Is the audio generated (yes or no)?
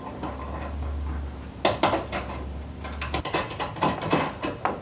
no